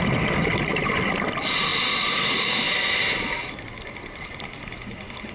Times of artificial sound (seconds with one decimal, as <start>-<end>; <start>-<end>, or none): none